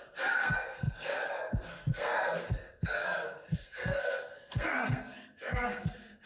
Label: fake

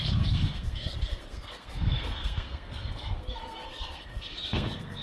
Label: fake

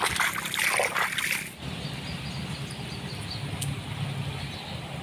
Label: real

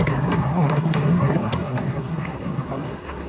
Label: fake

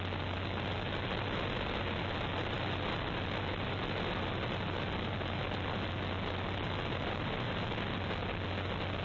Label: real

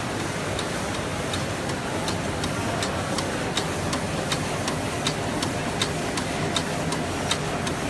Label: real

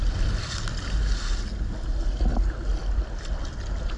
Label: real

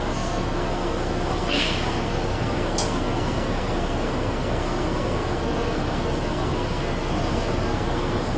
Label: fake